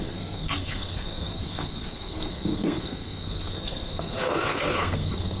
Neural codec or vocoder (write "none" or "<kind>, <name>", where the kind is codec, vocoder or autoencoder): codec, SNAC